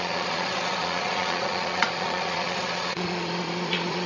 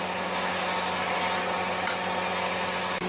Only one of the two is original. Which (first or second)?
second